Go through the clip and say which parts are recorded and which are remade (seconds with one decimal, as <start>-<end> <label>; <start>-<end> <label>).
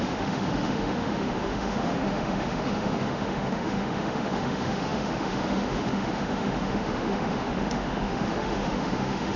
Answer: 0.0-9.4 remade